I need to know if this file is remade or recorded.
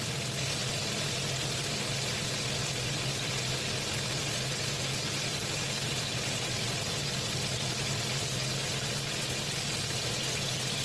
recorded